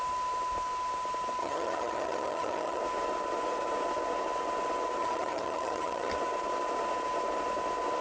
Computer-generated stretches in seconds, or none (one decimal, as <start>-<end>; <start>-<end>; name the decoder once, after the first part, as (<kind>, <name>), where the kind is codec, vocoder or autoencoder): 1.4-2.8 (vocoder, HiFi-GAN); 5.0-6.1